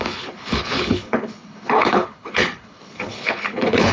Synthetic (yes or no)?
yes